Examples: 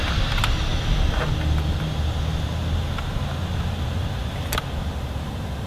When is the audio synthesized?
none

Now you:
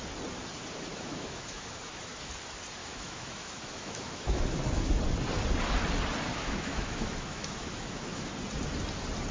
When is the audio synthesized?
0.9-2.3 (autoencoder, DAC-VAE); 2.8-4.9; 6.3-8.3

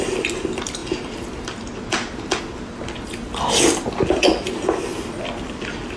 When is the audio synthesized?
none